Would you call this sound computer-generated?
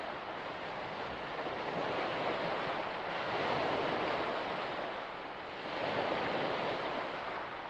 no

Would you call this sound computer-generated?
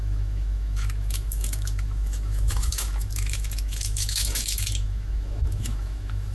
yes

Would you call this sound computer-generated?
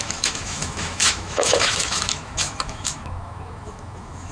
yes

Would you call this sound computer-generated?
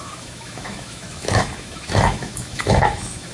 yes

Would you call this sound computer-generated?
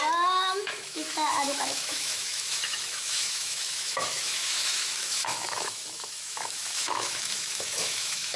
yes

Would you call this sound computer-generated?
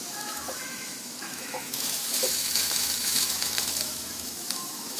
yes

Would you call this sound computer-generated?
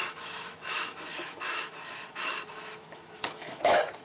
yes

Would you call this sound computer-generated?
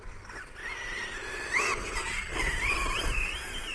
no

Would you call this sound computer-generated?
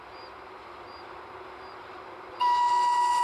no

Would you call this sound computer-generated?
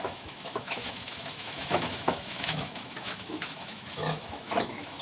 yes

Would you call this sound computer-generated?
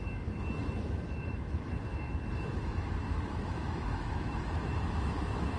yes